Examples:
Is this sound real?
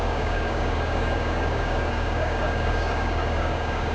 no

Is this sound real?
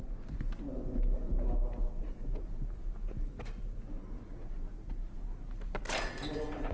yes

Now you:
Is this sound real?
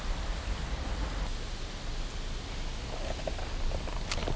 yes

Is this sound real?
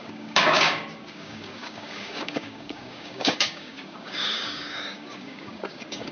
no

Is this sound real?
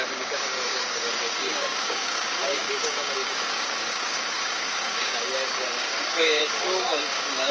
no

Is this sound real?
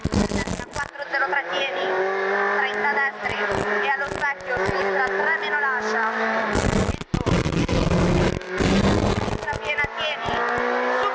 yes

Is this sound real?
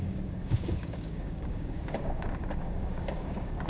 no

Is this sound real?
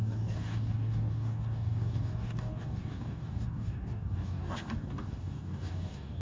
no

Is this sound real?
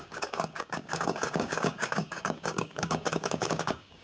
no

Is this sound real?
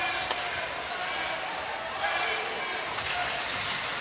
yes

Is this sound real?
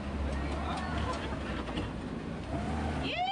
yes